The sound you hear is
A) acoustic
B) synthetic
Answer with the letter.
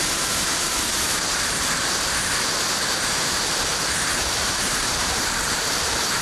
B